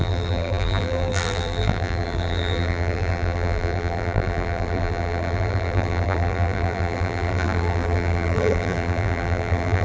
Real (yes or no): no